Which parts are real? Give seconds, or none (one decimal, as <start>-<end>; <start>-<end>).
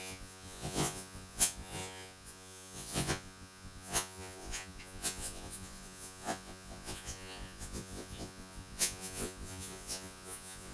none